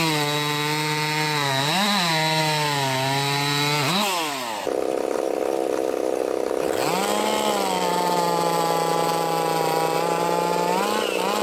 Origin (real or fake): real